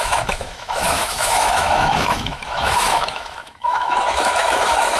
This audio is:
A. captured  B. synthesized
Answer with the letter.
B